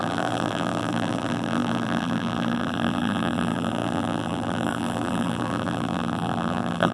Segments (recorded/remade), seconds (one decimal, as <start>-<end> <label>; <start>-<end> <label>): 0.0-6.9 remade